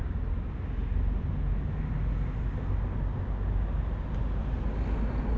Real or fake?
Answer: real